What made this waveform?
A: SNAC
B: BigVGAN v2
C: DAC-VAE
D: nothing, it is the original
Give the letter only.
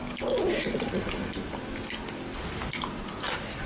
D